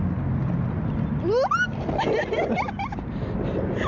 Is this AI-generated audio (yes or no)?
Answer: no